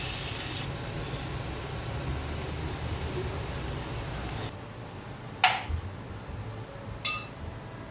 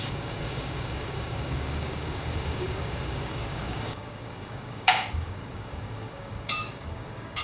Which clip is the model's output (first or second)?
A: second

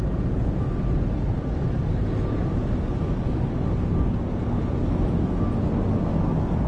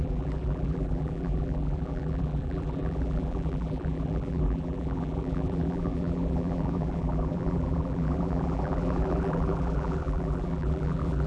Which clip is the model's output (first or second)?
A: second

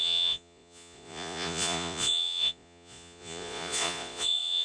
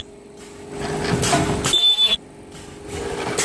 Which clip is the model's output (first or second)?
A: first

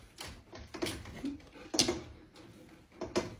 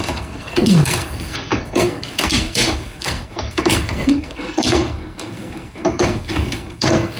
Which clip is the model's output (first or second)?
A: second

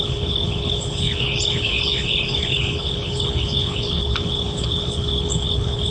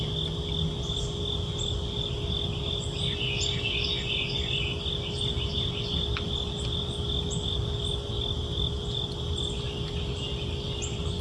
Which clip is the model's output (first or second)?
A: first